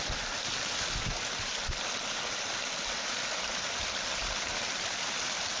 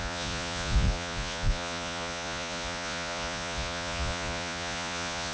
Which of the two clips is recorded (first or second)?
first